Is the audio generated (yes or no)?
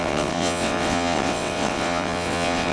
yes